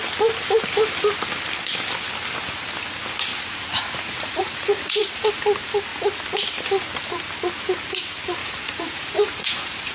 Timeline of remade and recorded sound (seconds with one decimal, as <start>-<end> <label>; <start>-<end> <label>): 0.0-3.3 recorded; 3.3-5.3 remade; 5.3-8.4 recorded; 8.4-9.9 remade